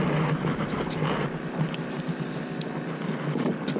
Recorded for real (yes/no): yes